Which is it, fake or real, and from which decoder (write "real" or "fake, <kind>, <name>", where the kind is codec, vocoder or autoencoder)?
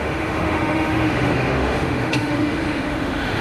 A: fake, autoencoder, DAC-VAE